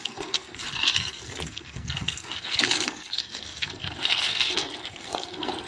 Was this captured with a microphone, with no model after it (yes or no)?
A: no